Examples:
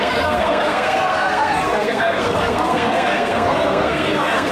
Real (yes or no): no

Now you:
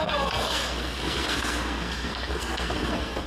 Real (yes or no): no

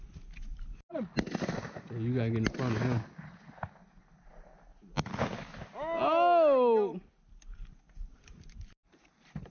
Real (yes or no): yes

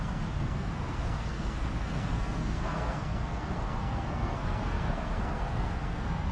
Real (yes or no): no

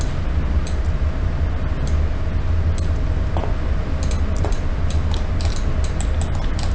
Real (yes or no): yes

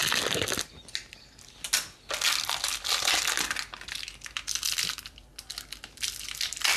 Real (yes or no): yes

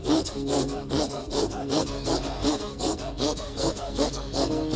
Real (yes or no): no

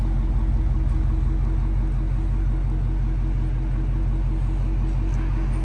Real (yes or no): yes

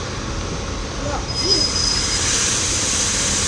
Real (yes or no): yes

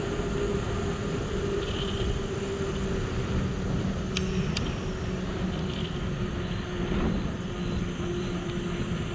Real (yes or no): yes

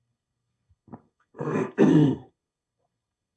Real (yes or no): no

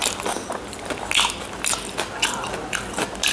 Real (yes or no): yes